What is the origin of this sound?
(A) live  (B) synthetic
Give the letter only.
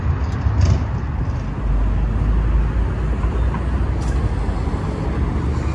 A